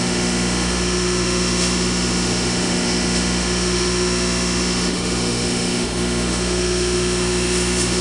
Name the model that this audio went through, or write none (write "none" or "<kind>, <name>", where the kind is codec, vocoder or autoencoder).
autoencoder, DAC-VAE